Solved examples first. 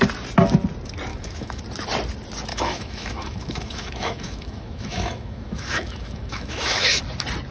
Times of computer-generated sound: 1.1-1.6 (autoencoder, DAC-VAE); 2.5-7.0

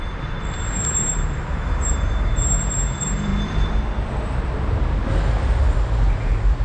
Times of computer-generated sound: 0.0-3.3 (vocoder, BigVGAN v2); 4.1-5.0; 5.7-6.6

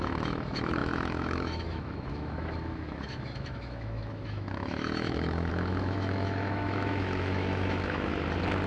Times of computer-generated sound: 0.0-8.1 (autoencoder, DAC-VAE)

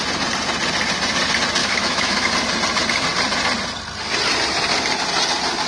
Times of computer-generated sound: 1.6-2.3 (autoencoder, DAC-VAE)

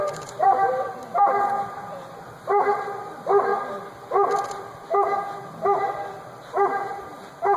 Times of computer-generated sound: 0.0-3.5 (vocoder, BigVGAN v2); 6.9-7.6

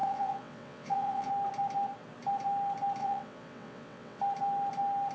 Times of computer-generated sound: 0.0-1.3 (vocoder, WaveNeXt); 3.0-4.2